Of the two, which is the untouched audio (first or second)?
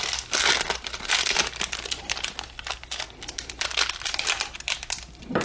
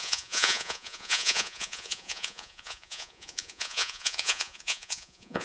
first